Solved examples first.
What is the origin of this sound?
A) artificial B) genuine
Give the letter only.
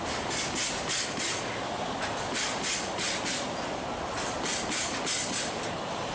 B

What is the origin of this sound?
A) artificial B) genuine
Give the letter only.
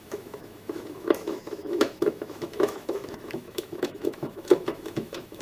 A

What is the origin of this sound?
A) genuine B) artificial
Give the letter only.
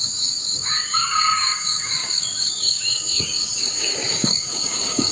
B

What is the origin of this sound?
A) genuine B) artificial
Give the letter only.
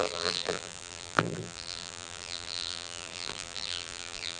B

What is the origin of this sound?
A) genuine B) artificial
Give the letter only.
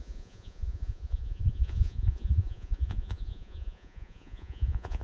B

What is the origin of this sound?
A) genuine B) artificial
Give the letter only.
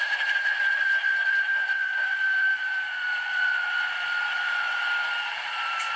B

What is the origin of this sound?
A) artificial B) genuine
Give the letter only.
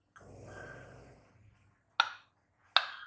B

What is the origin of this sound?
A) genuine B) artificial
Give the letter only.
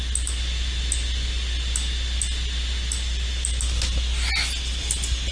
A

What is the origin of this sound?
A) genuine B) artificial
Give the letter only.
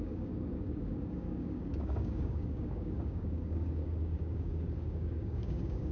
B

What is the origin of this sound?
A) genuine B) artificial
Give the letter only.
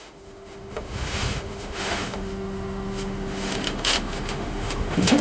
B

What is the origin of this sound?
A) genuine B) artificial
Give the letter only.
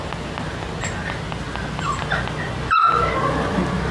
A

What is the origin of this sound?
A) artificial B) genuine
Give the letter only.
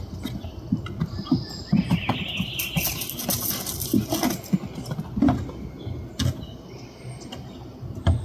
B